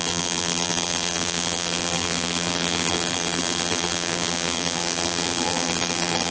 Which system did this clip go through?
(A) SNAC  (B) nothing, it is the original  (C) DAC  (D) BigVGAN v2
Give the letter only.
D